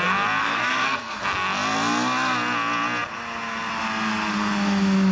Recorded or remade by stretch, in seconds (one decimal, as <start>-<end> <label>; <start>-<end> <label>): 0.0-0.4 recorded; 0.4-1.2 remade; 1.2-5.1 recorded